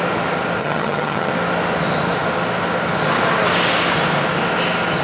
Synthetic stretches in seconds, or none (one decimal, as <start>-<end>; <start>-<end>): 0.6-1.3